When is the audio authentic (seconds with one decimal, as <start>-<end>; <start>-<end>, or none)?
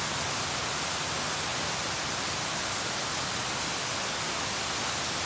0.0-5.3